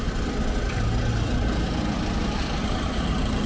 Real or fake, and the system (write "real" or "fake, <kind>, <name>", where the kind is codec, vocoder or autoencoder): real